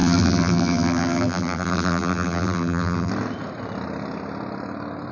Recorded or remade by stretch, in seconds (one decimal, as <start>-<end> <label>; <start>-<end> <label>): 0.0-3.1 remade; 3.1-5.1 recorded